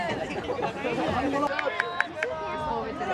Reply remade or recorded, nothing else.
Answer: recorded